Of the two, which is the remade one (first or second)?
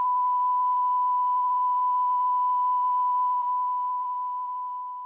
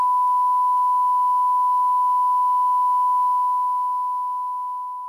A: first